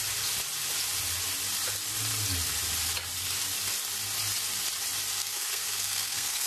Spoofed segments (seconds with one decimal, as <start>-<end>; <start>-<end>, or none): 5.2-6.5